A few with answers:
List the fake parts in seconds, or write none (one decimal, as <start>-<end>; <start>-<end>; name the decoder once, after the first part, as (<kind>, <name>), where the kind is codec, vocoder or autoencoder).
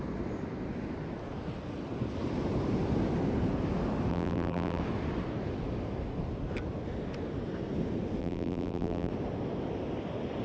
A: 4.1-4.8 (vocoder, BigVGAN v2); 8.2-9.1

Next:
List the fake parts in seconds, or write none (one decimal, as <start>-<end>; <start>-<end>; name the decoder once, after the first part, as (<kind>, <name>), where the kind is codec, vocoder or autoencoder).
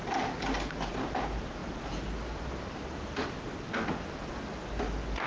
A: none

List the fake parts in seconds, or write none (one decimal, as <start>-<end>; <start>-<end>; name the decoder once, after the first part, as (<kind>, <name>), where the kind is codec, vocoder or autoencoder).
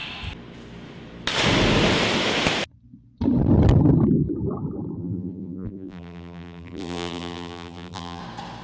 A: 5.0-8.2 (vocoder, BigVGAN v2)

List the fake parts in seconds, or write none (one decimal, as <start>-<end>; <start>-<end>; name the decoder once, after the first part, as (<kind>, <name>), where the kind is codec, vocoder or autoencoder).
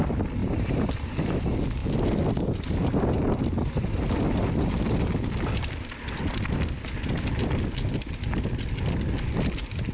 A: 0.4-1.4 (vocoder, BigVGAN v2)